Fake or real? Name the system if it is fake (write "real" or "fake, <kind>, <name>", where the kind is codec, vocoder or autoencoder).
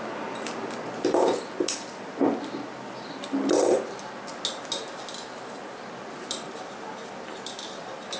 real